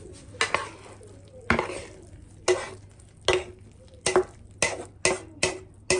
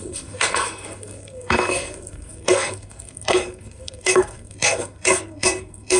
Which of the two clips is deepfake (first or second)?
second